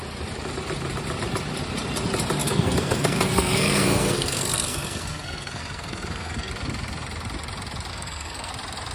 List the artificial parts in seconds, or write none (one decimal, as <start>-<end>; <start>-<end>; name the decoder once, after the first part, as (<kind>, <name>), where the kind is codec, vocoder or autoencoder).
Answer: 2.4-6.5 (codec, SNAC); 7.9-8.5